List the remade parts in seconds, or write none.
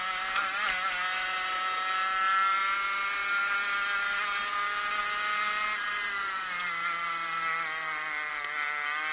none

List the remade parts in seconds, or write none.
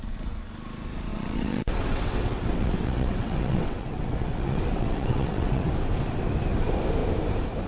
1.1-5.7 (vocoder, WaveNeXt)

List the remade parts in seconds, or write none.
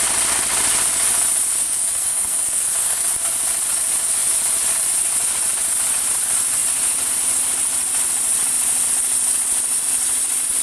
1.5-3.1 (codec, SNAC)